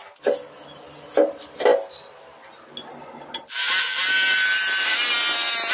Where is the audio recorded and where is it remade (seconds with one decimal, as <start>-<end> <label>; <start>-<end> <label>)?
0.0-5.7 recorded